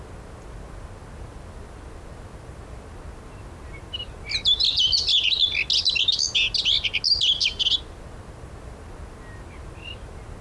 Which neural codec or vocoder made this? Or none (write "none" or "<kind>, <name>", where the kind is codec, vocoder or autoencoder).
none